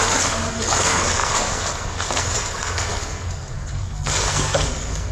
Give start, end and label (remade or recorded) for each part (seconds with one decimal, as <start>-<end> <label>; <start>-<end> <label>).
0.0-5.1 remade